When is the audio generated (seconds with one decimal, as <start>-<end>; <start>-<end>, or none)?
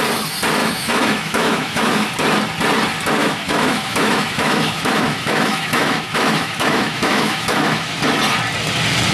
0.6-2.1; 3.2-8.0